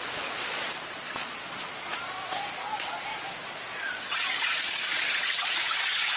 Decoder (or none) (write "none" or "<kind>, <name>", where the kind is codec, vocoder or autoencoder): vocoder, Vocos